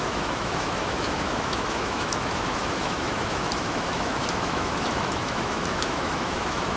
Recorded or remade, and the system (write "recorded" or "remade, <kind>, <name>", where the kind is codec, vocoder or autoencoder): remade, autoencoder, DAC-VAE